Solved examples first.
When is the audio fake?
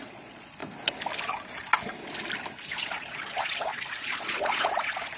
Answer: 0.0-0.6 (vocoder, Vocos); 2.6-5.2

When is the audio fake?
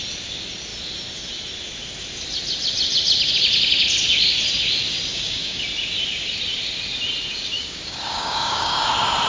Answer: 5.1-5.6 (codec, DAC); 7.3-8.9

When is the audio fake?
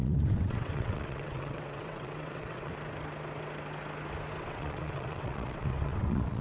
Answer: 0.0-2.7 (vocoder, WaveNeXt); 4.4-6.4